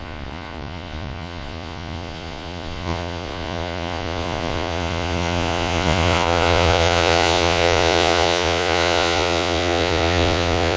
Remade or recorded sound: remade